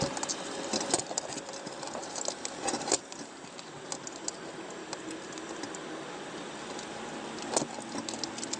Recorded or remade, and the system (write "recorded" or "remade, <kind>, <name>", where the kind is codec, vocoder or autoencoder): recorded